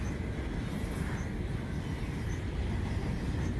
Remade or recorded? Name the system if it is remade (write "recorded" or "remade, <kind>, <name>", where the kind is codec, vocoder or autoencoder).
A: recorded